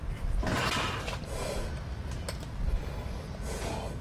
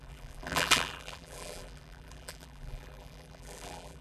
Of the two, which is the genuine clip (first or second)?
first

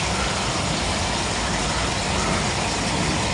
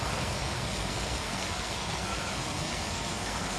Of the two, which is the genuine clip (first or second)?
first